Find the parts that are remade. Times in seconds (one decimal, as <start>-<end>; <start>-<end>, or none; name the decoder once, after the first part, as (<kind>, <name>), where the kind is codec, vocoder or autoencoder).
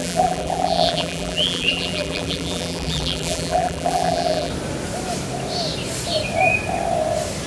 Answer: 0.0-4.5 (vocoder, BigVGAN v2)